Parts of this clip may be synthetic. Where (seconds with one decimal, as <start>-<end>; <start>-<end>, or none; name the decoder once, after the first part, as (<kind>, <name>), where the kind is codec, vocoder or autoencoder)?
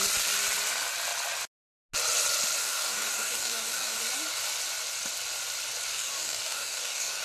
2.6-4.0 (codec, DAC); 5.9-7.2